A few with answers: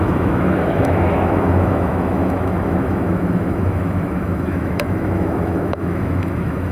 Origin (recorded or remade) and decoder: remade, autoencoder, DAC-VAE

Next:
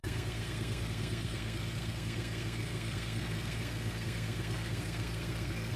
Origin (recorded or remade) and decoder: remade, codec, SNAC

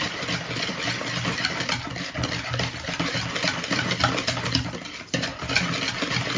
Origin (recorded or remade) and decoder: recorded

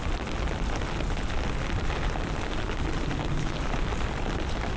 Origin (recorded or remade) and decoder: recorded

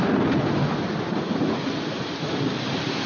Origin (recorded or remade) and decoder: recorded